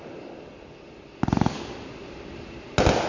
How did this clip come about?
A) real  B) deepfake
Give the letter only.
A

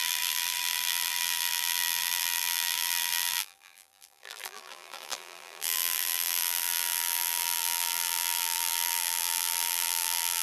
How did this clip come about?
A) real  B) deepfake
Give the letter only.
B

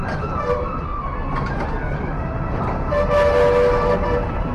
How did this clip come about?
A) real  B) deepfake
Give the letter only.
A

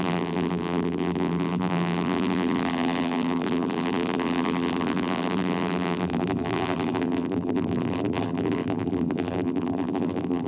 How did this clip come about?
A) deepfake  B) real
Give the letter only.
A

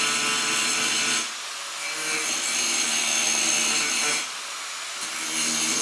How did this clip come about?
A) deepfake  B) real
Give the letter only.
B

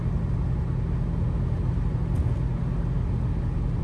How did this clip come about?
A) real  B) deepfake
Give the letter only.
A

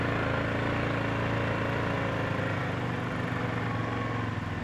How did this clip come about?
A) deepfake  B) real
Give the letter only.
B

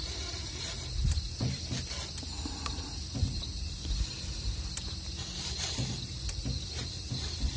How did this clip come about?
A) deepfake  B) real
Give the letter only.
B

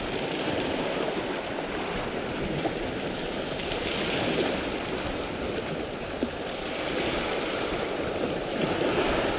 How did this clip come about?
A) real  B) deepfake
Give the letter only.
B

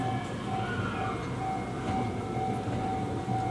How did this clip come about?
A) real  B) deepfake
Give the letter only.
A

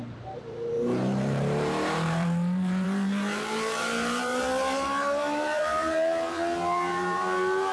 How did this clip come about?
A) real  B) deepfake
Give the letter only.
B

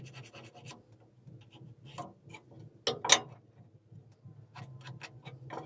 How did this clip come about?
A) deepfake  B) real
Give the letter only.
B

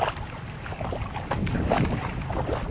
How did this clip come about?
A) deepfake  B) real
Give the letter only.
A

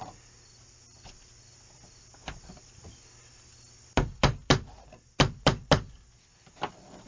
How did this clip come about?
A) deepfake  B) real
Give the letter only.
B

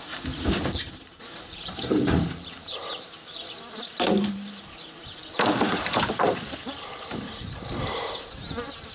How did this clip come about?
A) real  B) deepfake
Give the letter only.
B